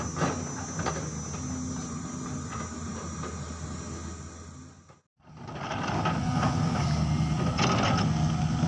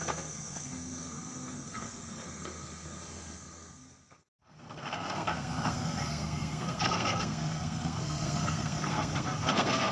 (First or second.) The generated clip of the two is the second